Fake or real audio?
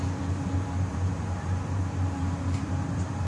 fake